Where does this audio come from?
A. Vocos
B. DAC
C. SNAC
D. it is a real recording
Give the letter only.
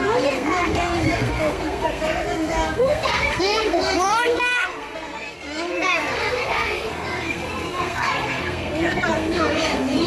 C